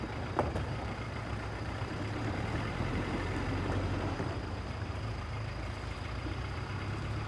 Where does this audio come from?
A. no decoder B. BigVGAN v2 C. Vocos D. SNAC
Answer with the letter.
B